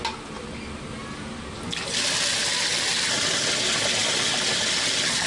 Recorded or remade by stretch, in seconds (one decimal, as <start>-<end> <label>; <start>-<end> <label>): 0.0-5.3 recorded